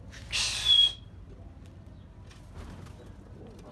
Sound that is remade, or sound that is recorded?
recorded